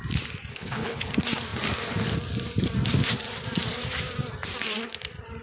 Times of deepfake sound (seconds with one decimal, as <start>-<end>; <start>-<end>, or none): 0.5-1.1